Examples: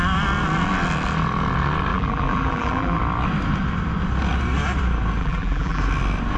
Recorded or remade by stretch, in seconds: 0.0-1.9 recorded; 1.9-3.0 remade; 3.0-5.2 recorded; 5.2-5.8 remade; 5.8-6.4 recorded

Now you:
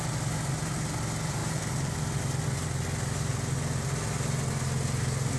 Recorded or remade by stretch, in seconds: 0.0-5.4 recorded

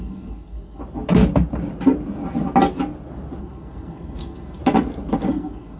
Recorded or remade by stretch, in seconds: 0.0-0.8 remade; 0.8-3.4 recorded; 3.4-4.6 remade; 4.6-5.3 recorded; 5.3-5.8 remade